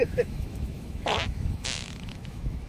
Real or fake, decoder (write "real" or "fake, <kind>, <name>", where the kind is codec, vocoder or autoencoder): fake, autoencoder, DAC-VAE